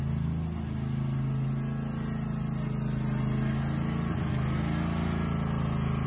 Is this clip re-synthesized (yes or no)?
no